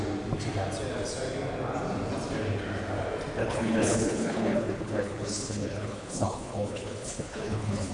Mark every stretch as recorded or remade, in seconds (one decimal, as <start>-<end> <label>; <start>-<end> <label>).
0.0-3.4 recorded; 3.4-7.9 remade